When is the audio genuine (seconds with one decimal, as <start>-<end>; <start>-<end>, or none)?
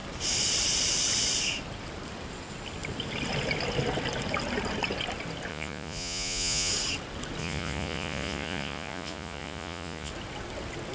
0.0-5.5; 6.7-7.4; 10.1-10.9